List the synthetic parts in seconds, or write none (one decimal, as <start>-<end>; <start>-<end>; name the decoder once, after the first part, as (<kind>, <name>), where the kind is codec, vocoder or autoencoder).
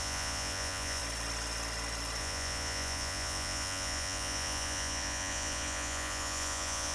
0.0-1.0 (vocoder, Vocos); 2.2-6.9